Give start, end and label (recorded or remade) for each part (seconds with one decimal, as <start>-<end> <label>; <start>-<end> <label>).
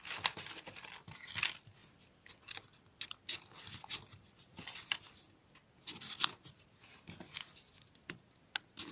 0.0-8.9 recorded